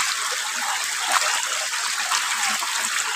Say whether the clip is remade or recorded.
recorded